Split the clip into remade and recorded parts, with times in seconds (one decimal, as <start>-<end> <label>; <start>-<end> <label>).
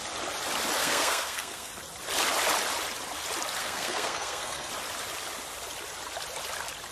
0.0-0.8 recorded; 0.8-1.7 remade; 1.7-3.6 recorded; 3.6-4.7 remade; 4.7-6.9 recorded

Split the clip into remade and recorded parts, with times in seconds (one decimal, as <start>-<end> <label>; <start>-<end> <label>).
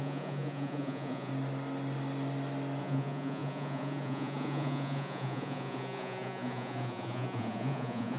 0.0-1.3 remade; 1.3-2.8 recorded; 2.8-8.2 remade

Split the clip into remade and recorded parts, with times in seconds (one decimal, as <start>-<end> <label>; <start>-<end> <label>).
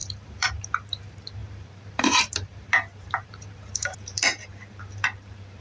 0.0-5.6 remade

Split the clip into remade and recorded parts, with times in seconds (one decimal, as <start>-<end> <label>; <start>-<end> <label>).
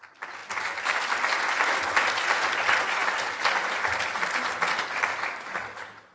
0.0-6.1 recorded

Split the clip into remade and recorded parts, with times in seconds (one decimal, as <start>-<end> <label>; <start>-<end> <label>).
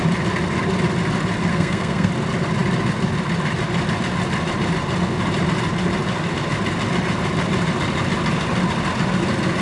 0.0-1.5 recorded; 1.5-2.1 remade; 2.1-9.6 recorded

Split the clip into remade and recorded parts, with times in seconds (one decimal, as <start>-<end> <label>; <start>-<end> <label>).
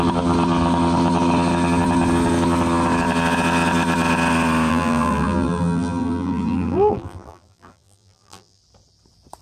0.0-4.7 recorded; 4.7-8.6 remade; 8.6-9.4 recorded